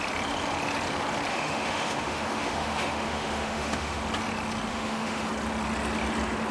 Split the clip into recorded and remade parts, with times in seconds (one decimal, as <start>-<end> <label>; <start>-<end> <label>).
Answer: 0.0-1.3 recorded; 1.3-4.0 remade; 4.0-4.7 recorded; 4.7-5.3 remade; 5.3-6.5 recorded